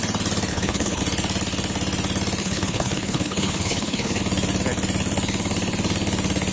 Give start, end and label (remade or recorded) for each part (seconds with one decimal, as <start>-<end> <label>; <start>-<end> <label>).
0.0-0.5 recorded; 0.5-1.0 remade; 1.0-2.4 recorded; 2.4-4.2 remade; 4.2-6.5 recorded